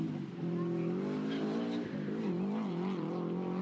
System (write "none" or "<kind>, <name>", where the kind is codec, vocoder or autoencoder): none